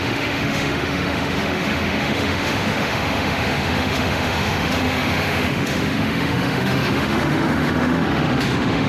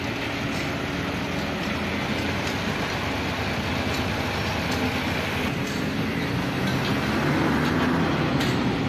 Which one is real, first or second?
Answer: second